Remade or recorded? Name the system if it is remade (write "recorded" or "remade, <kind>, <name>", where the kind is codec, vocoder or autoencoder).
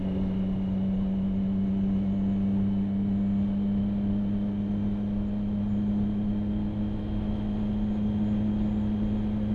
recorded